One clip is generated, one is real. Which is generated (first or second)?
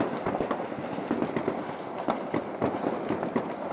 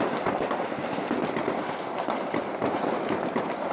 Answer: second